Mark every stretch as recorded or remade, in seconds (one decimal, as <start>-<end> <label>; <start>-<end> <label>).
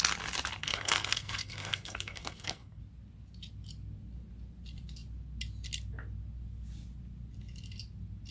0.0-0.6 recorded; 0.6-2.8 remade; 2.8-8.3 recorded